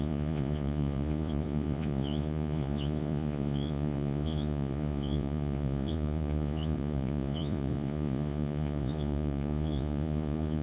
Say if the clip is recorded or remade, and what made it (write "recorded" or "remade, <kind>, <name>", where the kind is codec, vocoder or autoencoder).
remade, vocoder, Vocos